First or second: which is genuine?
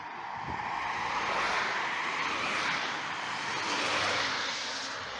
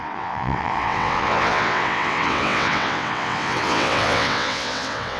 first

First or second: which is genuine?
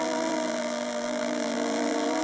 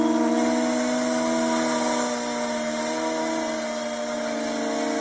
second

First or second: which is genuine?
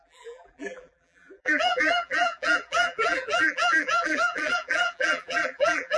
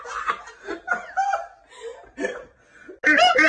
second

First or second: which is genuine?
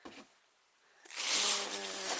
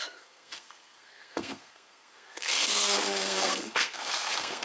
first